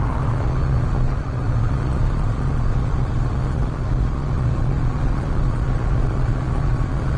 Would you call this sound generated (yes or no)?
yes